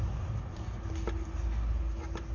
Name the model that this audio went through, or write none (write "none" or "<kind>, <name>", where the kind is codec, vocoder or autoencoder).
none